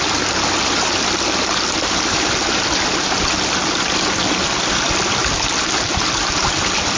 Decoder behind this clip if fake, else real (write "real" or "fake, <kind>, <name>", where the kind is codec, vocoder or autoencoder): real